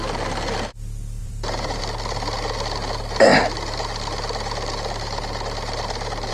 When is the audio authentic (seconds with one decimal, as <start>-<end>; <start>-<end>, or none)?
0.0-1.2; 1.8-6.3